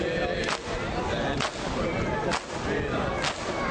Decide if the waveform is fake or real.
real